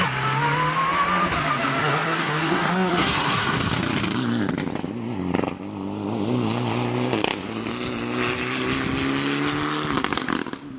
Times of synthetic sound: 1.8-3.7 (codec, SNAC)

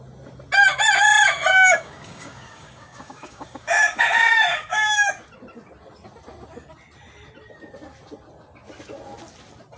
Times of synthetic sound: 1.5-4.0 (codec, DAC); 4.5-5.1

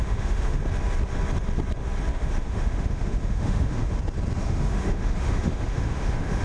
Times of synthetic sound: 0.0-0.6 (autoencoder, DAC-VAE); 2.1-4.0; 4.4-6.4